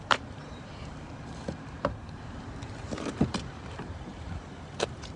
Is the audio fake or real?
fake